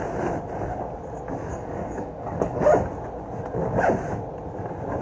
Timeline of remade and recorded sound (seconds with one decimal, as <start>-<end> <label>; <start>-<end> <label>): 0.0-1.5 recorded; 1.5-2.6 remade; 2.6-5.0 recorded